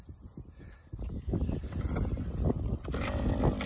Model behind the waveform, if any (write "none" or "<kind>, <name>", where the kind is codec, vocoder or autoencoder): none